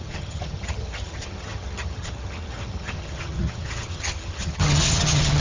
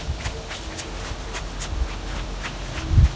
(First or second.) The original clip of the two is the second